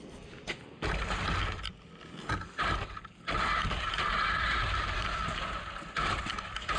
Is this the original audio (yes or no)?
yes